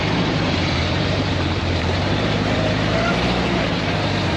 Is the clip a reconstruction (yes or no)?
yes